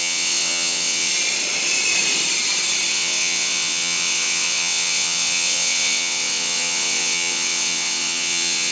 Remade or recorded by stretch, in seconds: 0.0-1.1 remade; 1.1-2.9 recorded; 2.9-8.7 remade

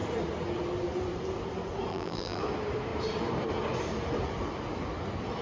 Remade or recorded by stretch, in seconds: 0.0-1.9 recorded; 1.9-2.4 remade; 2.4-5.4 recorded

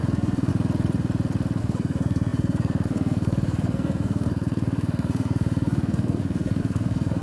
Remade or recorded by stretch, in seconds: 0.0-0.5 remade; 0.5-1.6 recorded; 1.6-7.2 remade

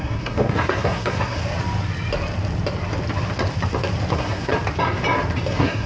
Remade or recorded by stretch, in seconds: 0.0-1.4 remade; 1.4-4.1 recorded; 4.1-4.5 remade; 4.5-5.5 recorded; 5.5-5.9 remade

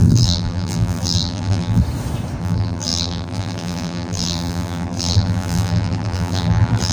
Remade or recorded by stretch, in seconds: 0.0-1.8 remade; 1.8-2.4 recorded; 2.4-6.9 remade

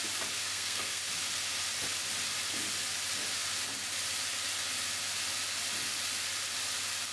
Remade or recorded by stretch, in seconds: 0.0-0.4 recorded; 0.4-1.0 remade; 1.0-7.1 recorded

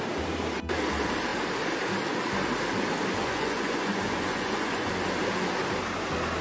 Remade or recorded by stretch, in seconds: 0.0-3.2 recorded; 3.2-4.9 remade; 4.9-6.4 recorded